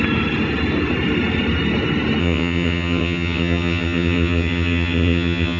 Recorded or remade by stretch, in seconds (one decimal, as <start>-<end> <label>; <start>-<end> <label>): 0.0-2.2 recorded; 2.2-5.6 remade